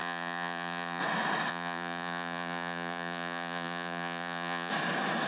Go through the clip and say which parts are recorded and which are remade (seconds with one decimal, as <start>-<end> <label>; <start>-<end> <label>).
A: 0.0-1.0 remade; 1.0-1.5 recorded; 1.5-4.7 remade; 4.7-5.3 recorded